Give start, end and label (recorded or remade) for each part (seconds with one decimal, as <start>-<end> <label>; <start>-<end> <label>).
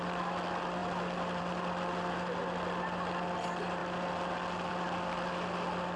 0.0-6.0 recorded